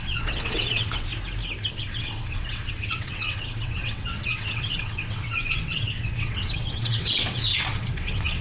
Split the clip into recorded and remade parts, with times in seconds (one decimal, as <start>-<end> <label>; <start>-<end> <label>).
0.0-1.1 remade; 1.1-1.7 recorded; 1.7-8.4 remade